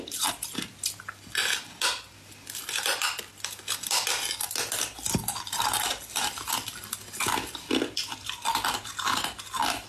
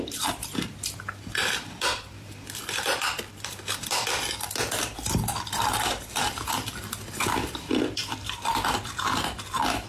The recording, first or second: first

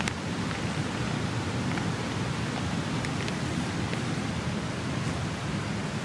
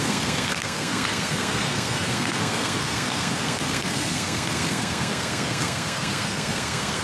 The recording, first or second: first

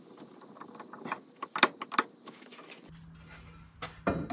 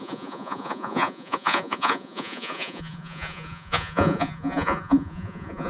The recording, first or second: first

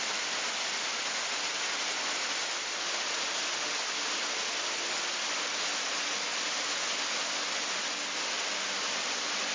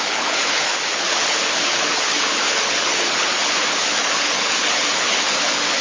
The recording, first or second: first